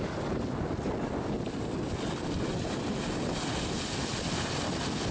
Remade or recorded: recorded